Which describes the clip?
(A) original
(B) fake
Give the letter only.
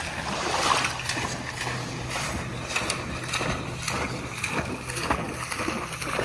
A